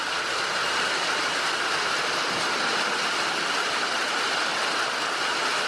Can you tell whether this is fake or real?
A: real